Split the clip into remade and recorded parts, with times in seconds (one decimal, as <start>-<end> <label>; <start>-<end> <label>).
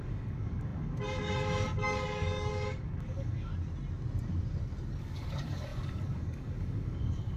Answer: 0.0-3.5 remade; 3.5-5.0 recorded; 5.0-7.4 remade